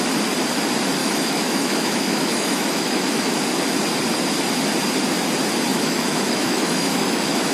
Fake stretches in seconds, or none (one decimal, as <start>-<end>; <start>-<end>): 1.0-3.3; 5.7-7.5